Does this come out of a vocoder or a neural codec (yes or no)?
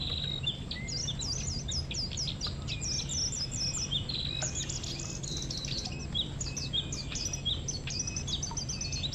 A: no